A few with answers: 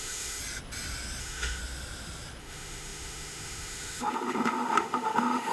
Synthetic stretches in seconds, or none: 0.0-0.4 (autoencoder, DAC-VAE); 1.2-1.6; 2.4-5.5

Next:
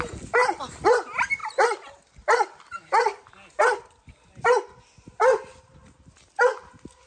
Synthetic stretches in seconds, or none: none

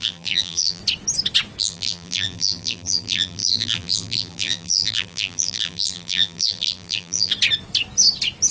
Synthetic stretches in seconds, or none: 0.0-0.8 (vocoder, BigVGAN v2); 1.6-7.3

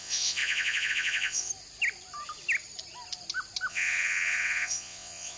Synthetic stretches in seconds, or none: 0.0-1.5 (vocoder, WaveNeXt); 3.7-5.4

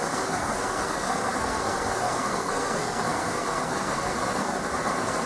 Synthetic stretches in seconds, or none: 0.0-5.3 (codec, SNAC)

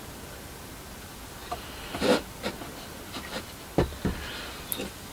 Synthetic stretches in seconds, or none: none